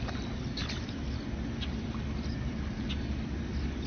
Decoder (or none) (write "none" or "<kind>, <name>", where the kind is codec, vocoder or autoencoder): none